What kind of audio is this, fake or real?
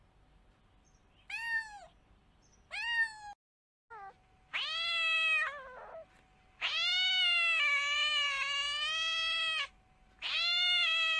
real